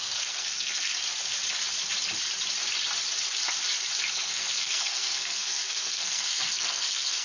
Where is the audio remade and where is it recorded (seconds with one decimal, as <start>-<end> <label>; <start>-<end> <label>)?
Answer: 0.0-0.9 remade; 0.9-4.1 recorded; 4.1-7.2 remade